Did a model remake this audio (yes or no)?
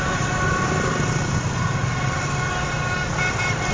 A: yes